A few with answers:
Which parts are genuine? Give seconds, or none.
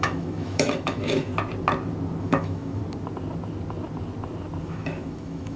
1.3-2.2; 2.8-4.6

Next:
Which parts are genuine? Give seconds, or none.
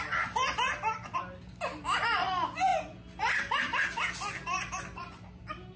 0.0-5.8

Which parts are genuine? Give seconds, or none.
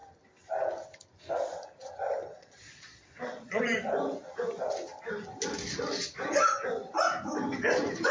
0.0-2.3; 3.6-8.1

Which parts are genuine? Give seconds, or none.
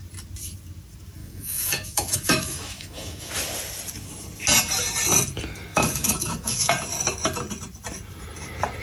0.0-1.2; 3.3-5.7; 6.7-8.8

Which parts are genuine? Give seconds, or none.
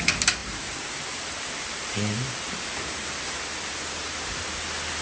0.0-0.4; 3.4-5.0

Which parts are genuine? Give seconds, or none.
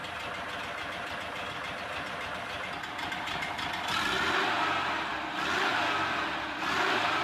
0.0-7.2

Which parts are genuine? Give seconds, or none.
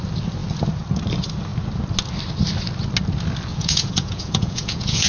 0.0-3.5